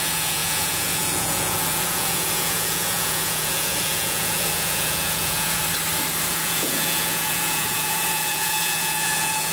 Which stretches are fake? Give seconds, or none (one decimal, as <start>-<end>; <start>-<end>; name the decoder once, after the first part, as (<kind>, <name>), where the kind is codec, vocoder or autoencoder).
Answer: 0.0-5.6 (vocoder, Vocos); 6.3-9.5